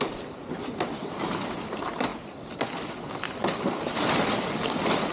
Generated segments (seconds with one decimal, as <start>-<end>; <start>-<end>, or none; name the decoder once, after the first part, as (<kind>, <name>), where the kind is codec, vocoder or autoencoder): none

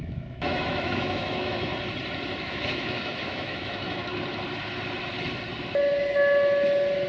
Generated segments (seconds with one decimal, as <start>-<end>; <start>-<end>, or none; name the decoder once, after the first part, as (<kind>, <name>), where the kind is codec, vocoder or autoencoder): 0.0-1.7 (autoencoder, DAC-VAE); 2.4-4.1

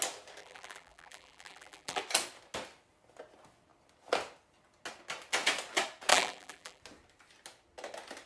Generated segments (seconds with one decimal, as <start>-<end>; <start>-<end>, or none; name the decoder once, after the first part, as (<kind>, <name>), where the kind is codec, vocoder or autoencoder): 0.4-2.0 (vocoder, BigVGAN v2); 6.1-6.8

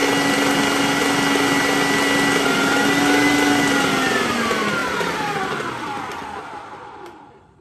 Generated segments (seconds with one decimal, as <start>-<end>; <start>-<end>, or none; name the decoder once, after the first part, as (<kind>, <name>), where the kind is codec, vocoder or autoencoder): 4.8-5.7 (vocoder, BigVGAN v2)

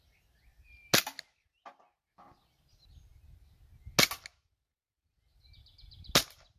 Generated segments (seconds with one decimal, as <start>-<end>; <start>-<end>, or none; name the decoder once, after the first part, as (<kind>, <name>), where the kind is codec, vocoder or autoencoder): none